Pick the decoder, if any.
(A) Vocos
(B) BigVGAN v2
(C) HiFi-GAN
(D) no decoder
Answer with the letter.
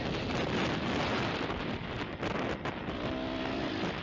D